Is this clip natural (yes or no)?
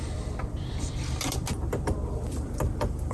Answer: no